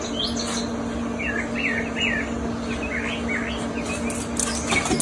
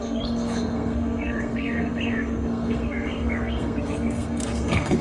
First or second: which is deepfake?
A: second